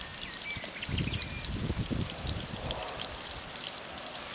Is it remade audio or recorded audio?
recorded